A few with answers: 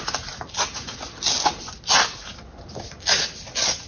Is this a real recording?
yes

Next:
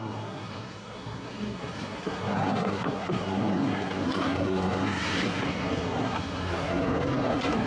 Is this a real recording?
no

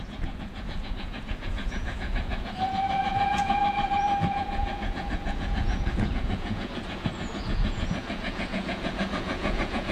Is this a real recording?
no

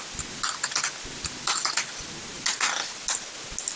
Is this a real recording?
yes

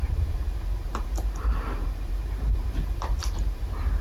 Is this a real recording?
no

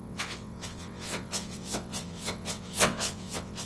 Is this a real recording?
no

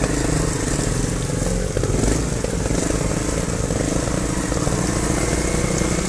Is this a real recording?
yes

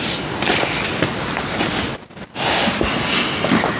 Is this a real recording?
yes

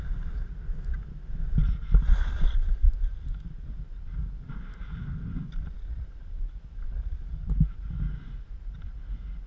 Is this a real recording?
yes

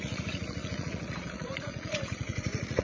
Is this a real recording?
no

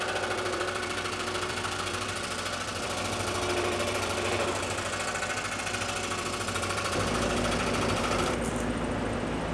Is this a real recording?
no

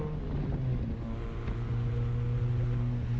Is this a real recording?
yes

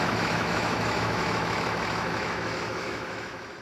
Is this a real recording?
no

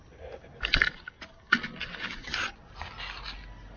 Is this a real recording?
yes